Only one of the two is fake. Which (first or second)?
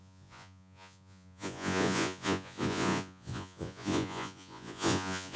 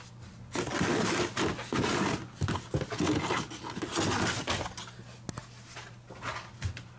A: first